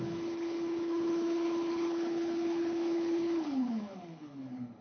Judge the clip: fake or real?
fake